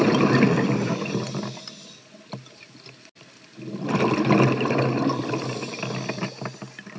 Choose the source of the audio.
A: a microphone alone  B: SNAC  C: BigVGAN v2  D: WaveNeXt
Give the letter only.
A